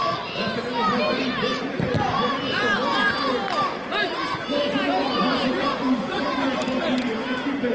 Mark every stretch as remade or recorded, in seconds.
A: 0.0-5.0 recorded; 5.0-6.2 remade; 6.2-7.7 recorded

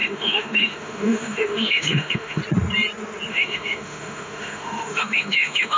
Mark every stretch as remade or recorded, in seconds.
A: 0.0-2.4 remade; 2.4-3.3 recorded; 3.3-5.8 remade

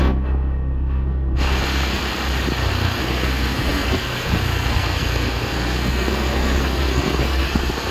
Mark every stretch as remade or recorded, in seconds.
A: 0.0-2.0 remade; 2.0-2.7 recorded; 2.7-7.9 remade